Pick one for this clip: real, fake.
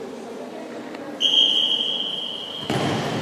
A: real